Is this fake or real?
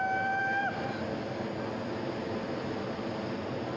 real